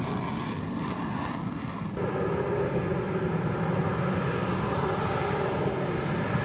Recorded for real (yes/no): yes